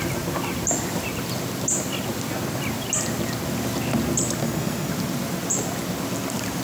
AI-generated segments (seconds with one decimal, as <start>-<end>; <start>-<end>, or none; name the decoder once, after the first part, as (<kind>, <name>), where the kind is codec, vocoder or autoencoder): 4.4-4.9 (codec, SNAC)